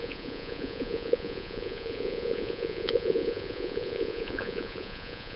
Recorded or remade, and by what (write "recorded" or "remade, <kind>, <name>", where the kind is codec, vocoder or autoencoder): remade, vocoder, Vocos